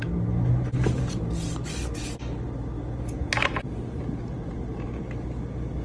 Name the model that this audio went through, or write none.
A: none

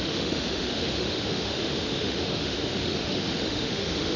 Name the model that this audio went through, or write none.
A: autoencoder, DAC-VAE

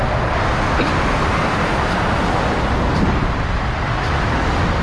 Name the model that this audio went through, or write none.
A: none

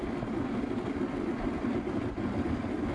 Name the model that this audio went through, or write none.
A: none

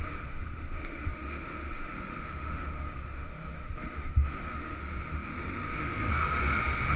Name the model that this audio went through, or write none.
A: autoencoder, DAC-VAE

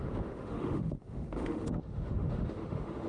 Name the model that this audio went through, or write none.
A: autoencoder, DAC-VAE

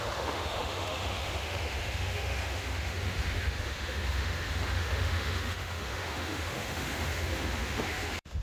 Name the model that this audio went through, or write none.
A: autoencoder, DAC-VAE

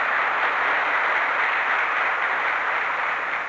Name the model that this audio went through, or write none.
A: none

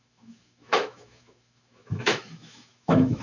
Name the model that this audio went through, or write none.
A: autoencoder, DAC-VAE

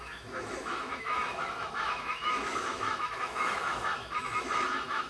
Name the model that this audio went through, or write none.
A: autoencoder, DAC-VAE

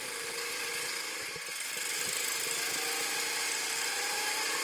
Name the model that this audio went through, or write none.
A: none